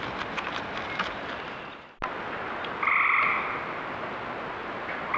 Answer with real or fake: real